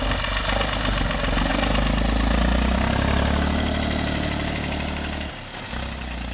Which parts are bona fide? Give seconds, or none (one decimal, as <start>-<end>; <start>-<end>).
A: 0.0-6.3